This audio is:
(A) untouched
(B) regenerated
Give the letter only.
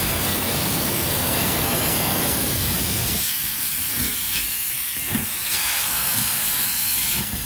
B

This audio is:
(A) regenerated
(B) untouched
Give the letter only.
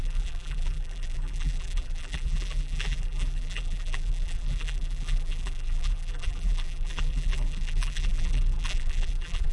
A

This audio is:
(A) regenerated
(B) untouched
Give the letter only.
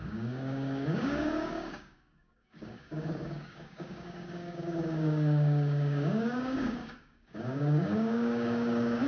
A